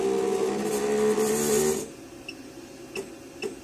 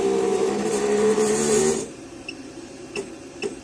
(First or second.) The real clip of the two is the first